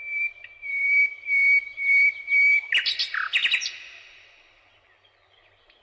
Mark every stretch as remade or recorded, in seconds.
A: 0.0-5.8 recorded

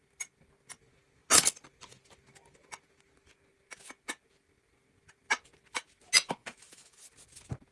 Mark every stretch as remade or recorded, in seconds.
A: 0.0-6.4 recorded; 6.4-7.0 remade; 7.0-7.7 recorded

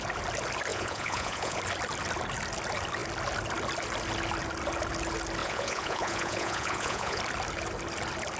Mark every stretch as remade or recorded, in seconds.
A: 0.0-0.7 recorded; 0.7-1.6 remade; 1.6-5.4 recorded; 5.4-7.2 remade; 7.2-8.4 recorded

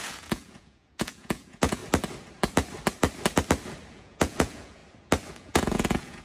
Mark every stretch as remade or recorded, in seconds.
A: 0.0-1.8 remade; 1.8-3.9 recorded; 3.9-4.8 remade; 4.8-5.3 recorded; 5.3-6.2 remade

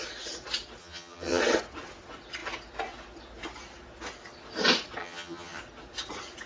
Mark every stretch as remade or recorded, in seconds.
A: 0.0-0.8 recorded; 0.8-1.4 remade; 1.4-5.0 recorded; 5.0-5.6 remade; 5.6-6.5 recorded